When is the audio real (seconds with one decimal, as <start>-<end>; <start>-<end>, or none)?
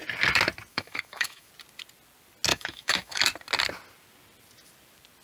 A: 0.0-0.7; 1.5-2.5; 3.2-5.2